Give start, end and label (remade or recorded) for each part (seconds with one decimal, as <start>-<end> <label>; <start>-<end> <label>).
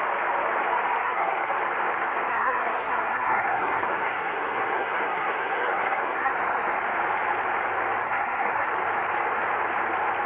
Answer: 0.0-1.0 recorded; 1.0-1.6 remade; 1.6-2.3 recorded; 2.3-6.3 remade; 6.3-8.0 recorded; 8.0-8.7 remade; 8.7-10.3 recorded